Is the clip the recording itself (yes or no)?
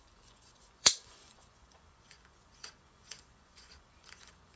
no